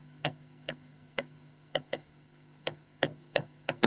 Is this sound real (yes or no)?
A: no